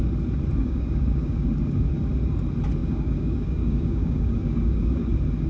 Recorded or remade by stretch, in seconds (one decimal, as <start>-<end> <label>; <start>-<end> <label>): 0.0-0.6 recorded; 0.6-1.5 remade; 1.5-2.8 recorded; 2.8-5.1 remade; 5.1-5.5 recorded